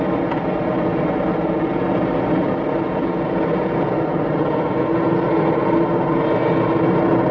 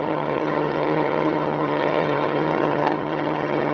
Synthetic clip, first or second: second